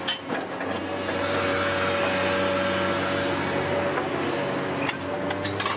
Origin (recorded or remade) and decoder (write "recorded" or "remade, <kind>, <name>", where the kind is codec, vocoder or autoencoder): recorded